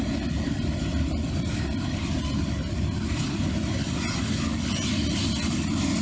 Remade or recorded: recorded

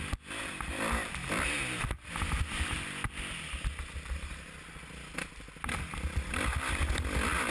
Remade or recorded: recorded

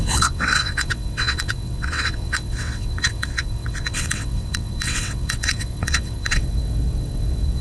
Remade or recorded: remade